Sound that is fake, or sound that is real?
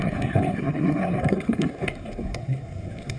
fake